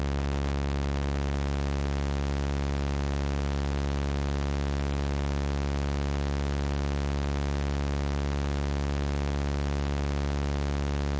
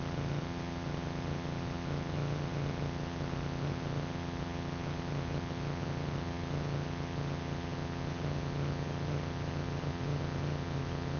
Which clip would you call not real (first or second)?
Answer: second